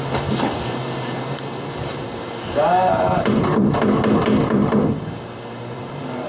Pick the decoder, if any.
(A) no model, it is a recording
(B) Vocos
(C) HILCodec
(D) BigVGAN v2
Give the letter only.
D